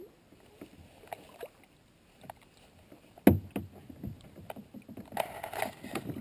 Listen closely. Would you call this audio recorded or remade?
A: recorded